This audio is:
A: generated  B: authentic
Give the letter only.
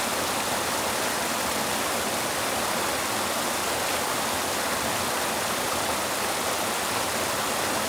B